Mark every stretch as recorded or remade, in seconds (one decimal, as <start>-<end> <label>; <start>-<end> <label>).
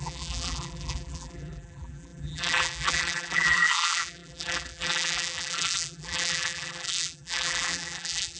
0.0-8.4 remade